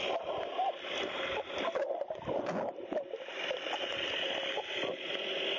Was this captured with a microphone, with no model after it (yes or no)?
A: yes